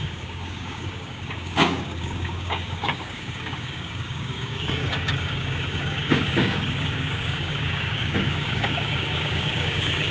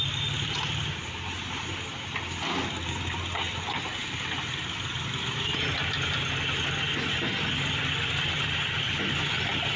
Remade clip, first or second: first